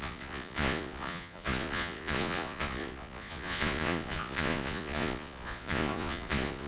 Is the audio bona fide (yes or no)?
no